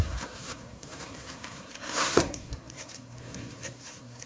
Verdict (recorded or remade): remade